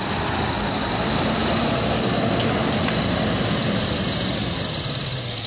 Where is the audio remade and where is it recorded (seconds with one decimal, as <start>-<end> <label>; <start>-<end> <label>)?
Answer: 0.0-5.5 recorded